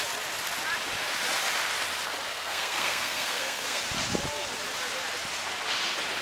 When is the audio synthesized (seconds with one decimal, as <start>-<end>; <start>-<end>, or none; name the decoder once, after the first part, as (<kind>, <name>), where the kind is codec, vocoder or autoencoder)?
2.3-3.8 (codec, SNAC)